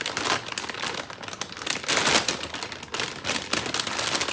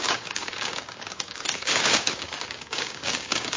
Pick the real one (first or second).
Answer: first